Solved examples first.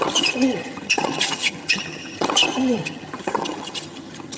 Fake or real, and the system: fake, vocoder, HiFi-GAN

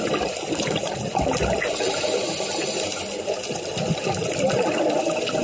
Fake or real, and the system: real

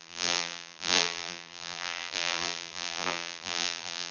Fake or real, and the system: fake, vocoder, BigVGAN v2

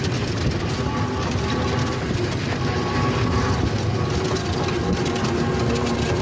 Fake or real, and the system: real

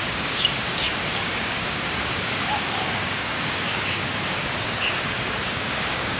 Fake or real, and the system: fake, codec, DAC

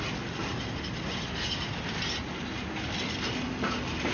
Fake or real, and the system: real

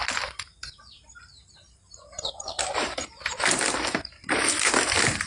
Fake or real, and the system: fake, vocoder, BigVGAN v2